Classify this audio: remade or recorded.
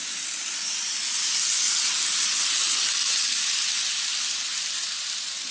recorded